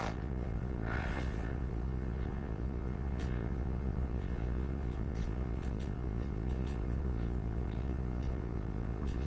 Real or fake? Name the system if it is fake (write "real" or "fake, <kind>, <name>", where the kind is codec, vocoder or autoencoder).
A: fake, vocoder, Vocos